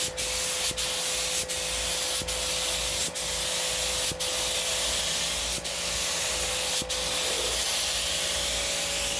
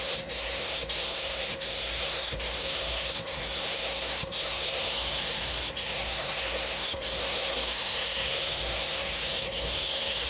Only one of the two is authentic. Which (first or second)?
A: first